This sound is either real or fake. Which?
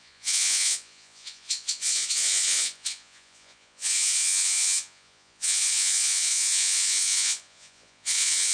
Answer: fake